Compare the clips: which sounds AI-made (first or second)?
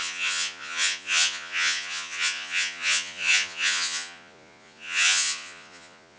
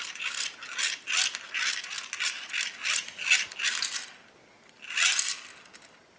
first